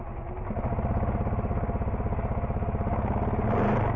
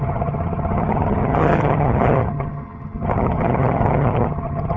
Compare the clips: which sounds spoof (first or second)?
second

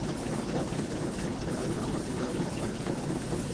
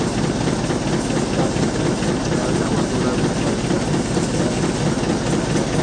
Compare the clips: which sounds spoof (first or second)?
first